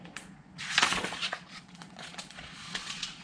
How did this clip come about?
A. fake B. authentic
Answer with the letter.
A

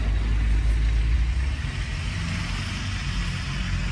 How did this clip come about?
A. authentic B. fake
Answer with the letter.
A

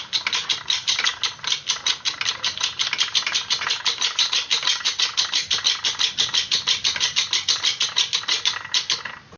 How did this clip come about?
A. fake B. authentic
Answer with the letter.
A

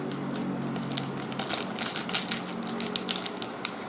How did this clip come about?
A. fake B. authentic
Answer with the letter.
B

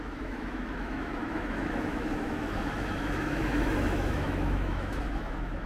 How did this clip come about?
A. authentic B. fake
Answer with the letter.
B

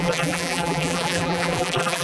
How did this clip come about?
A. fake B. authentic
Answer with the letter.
A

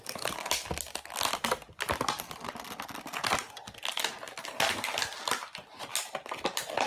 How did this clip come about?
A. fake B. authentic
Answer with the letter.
B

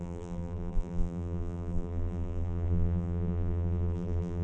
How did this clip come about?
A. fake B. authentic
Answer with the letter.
A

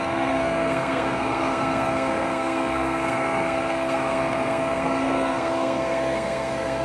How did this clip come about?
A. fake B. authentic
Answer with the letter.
A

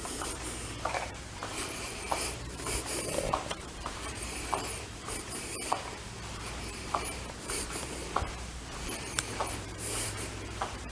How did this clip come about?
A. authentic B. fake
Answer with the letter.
B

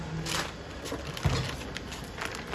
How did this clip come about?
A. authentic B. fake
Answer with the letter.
A